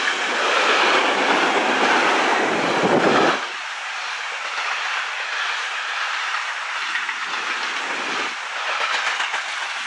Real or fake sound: real